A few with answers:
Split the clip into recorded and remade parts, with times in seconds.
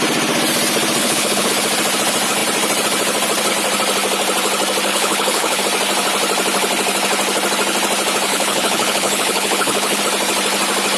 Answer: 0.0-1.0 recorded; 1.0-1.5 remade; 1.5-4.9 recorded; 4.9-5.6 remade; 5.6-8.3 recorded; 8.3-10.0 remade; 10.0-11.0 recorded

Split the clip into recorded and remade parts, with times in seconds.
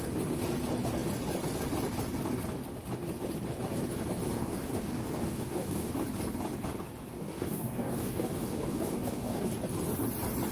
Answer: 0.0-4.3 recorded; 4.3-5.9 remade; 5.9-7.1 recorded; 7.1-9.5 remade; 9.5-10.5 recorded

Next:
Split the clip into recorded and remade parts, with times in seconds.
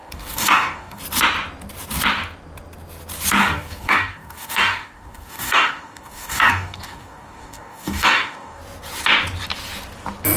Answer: 0.0-1.0 remade; 1.0-3.4 recorded; 3.4-8.6 remade; 8.6-10.4 recorded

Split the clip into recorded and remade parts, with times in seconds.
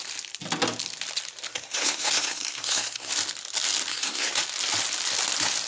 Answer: 0.0-1.5 recorded; 1.5-3.1 remade; 3.1-3.9 recorded; 3.9-4.4 remade; 4.4-5.7 recorded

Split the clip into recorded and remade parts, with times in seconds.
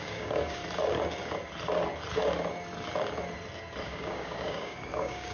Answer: 0.0-0.6 remade; 0.6-3.8 recorded; 3.8-5.3 remade